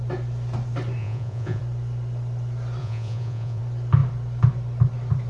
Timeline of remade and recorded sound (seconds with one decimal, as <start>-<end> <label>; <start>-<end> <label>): 0.0-1.0 recorded; 1.0-1.6 remade; 1.6-2.8 recorded; 2.8-3.6 remade; 3.6-5.3 recorded